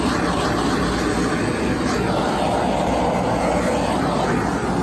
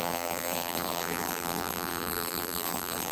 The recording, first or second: first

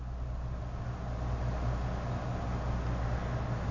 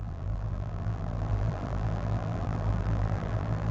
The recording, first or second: first